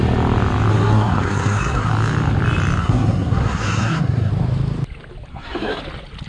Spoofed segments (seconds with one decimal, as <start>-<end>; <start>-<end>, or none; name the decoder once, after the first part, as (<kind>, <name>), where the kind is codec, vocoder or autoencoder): 0.7-1.9 (codec, SNAC); 2.8-4.3; 5.3-5.8